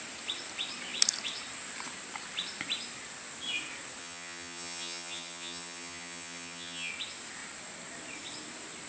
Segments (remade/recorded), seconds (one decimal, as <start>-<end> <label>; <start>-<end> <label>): 0.0-4.0 recorded; 4.0-6.9 remade; 6.9-8.9 recorded